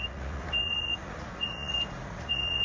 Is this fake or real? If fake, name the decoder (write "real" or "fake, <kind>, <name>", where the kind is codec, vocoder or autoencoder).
fake, vocoder, Vocos